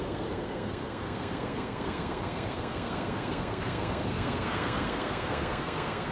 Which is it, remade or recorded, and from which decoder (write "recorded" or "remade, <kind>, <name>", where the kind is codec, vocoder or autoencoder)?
remade, codec, SNAC